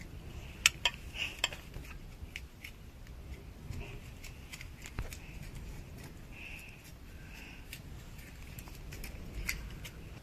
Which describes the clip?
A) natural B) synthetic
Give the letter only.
A